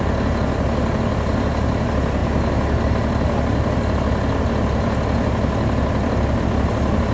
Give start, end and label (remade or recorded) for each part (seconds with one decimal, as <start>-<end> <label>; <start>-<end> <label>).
0.0-7.1 recorded